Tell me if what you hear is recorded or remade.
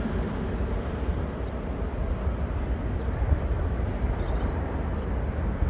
recorded